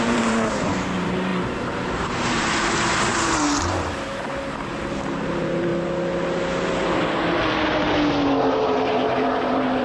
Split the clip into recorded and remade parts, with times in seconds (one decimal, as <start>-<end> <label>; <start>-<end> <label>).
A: 0.0-1.3 remade; 1.3-1.9 recorded; 1.9-4.1 remade; 4.1-4.8 recorded; 4.8-5.7 remade; 5.7-8.6 recorded; 8.6-9.8 remade

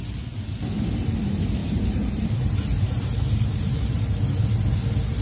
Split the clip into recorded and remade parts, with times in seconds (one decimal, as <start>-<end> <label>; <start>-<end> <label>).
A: 0.0-1.6 recorded; 1.6-4.0 remade; 4.0-5.2 recorded

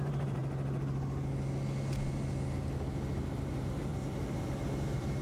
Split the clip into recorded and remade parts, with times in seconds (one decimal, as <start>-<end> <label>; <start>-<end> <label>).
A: 0.0-0.4 remade; 0.4-3.5 recorded; 3.5-5.2 remade